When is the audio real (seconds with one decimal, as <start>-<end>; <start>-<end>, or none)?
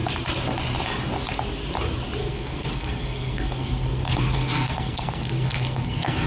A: 0.0-2.2